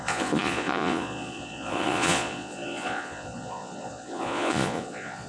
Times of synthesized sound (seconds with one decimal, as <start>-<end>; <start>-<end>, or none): 0.0-5.3